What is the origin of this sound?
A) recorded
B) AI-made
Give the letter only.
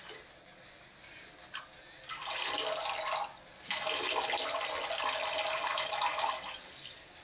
A